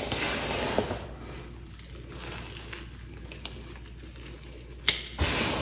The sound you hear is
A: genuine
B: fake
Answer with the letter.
A